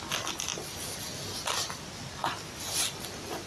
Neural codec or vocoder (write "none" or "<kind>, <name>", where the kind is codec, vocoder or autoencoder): none